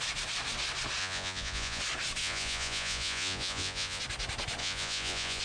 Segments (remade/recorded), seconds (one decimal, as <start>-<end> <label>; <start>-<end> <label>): 0.0-1.0 recorded; 1.0-1.8 remade; 1.8-2.2 recorded; 2.2-4.0 remade; 4.0-4.6 recorded; 4.6-5.4 remade